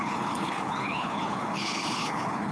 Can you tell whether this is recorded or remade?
remade